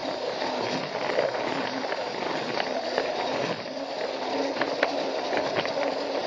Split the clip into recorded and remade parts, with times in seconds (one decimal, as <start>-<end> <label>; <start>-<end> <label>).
0.0-6.3 recorded